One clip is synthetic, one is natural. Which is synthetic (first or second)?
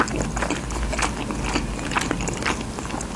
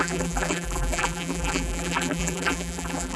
second